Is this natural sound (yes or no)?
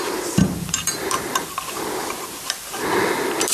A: no